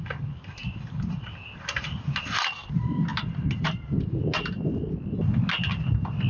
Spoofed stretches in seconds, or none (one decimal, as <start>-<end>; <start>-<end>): none